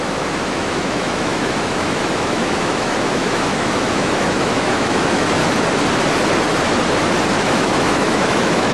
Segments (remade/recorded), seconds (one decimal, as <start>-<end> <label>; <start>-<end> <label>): 0.0-5.4 remade; 5.4-7.3 recorded; 7.3-8.7 remade